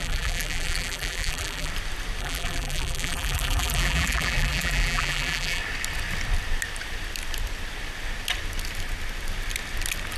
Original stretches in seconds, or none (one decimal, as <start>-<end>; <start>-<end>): 1.7-2.2; 5.6-10.2